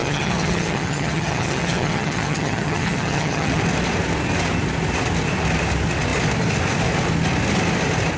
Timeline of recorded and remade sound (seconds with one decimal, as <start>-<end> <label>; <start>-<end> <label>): 0.0-3.6 remade; 3.6-8.2 recorded